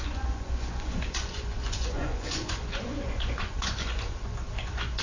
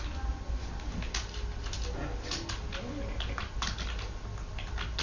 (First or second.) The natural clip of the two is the second